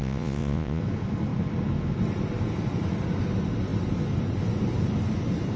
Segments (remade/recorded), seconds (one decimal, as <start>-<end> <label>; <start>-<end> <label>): 0.0-0.8 remade; 0.8-5.6 recorded